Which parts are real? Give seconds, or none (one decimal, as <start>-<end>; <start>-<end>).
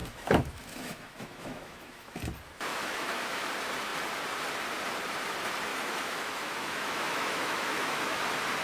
2.2-2.7; 3.5-5.7; 8.2-8.6